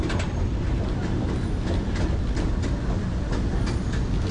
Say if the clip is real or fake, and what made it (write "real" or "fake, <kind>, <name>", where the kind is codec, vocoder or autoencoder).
real